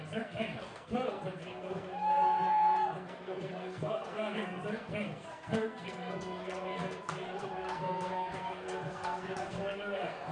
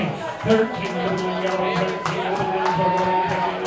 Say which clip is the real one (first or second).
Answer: second